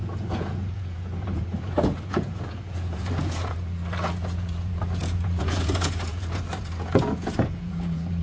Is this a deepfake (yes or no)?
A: yes